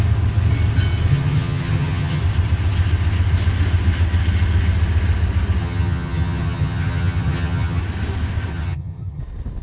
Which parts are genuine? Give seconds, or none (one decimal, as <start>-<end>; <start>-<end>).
0.0-1.1; 2.2-5.6; 7.8-8.5; 9.2-9.6

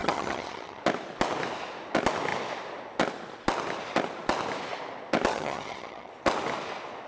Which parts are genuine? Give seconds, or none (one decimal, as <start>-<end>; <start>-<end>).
0.8-5.3; 6.1-7.1